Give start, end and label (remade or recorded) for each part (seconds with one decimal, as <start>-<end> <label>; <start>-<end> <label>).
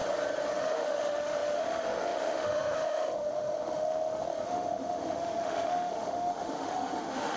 0.0-0.6 recorded; 0.6-7.4 remade